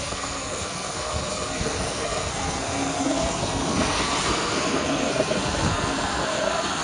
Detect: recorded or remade remade